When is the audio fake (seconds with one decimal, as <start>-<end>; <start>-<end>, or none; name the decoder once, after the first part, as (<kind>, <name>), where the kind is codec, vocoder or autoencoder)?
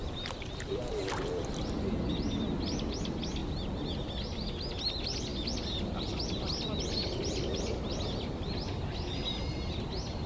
0.0-0.7 (vocoder, BigVGAN v2)